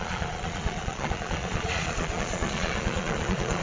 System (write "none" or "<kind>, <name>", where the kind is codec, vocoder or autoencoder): vocoder, Vocos